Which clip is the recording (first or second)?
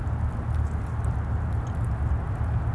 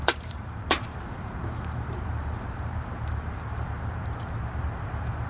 first